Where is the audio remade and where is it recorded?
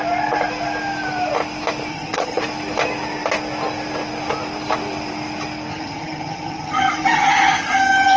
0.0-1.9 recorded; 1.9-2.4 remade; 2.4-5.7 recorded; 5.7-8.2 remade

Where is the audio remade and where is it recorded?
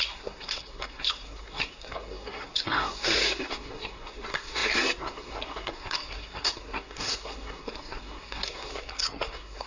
0.0-9.7 remade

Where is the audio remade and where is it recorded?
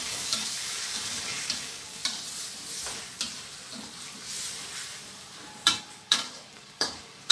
0.0-2.0 remade; 2.0-5.8 recorded; 5.8-7.3 remade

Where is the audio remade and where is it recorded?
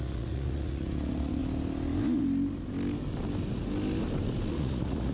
0.0-1.4 remade; 1.4-4.5 recorded; 4.5-5.1 remade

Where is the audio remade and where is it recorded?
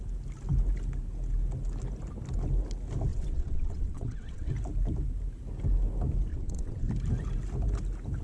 0.0-3.1 recorded; 3.1-4.5 remade; 4.5-6.3 recorded; 6.3-6.9 remade; 6.9-8.2 recorded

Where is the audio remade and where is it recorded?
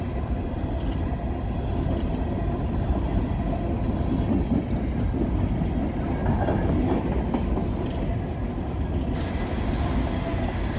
0.0-10.8 recorded